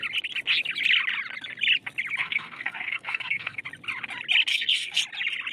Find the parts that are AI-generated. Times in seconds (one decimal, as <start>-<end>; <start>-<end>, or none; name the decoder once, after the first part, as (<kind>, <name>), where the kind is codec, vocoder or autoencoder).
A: 2.2-3.6 (codec, SNAC); 4.5-5.0